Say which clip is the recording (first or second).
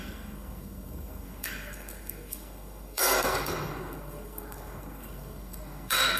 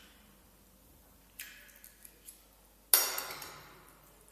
second